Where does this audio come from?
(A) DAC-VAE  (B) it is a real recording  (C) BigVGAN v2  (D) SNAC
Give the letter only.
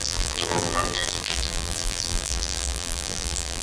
C